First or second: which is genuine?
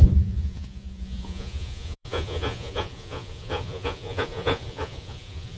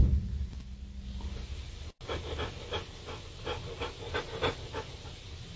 second